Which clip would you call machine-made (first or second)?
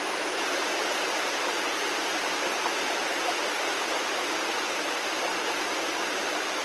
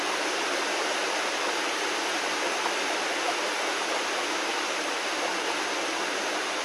first